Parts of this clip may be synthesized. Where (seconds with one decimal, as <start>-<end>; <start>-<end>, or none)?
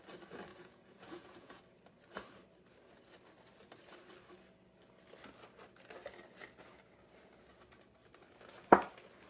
0.5-1.6